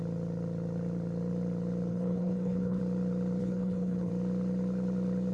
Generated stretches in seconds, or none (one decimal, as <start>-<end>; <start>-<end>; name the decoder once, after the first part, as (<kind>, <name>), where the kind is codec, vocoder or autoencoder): 1.9-2.8 (codec, HILCodec); 3.4-4.1